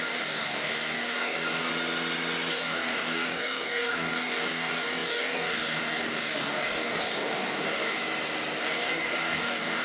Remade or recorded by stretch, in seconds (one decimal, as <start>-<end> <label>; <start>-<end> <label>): 0.0-1.7 remade; 1.7-2.5 recorded; 2.5-8.0 remade; 8.0-8.6 recorded; 8.6-9.8 remade